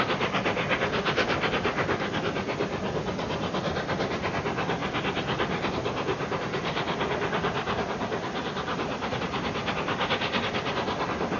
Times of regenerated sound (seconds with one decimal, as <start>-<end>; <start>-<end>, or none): none